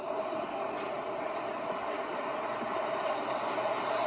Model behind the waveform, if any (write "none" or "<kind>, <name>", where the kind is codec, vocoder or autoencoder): none